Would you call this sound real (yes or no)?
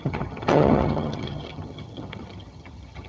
no